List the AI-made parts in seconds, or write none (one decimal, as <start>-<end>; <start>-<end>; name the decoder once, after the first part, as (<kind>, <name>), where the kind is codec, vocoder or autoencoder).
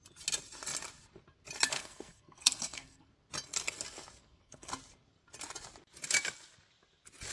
1.8-3.1 (codec, SNAC); 4.2-4.7